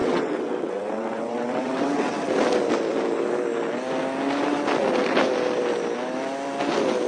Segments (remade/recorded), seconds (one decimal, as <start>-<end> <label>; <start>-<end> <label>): 0.0-2.3 remade; 2.3-7.1 recorded